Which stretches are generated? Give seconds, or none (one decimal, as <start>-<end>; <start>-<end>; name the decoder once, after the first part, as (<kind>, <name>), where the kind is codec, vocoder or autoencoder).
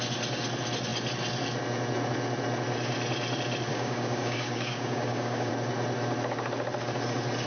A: 3.7-5.5 (codec, DAC)